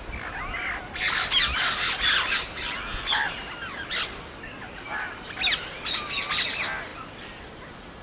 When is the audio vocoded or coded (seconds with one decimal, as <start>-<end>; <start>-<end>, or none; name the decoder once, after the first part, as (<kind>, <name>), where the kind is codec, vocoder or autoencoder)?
none